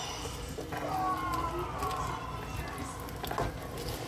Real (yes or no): yes